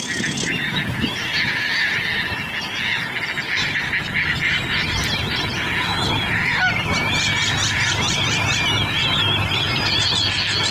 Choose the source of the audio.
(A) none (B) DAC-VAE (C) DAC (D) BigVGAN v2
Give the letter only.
A